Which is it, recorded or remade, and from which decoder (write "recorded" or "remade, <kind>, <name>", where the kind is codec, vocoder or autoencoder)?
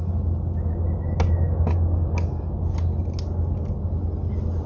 recorded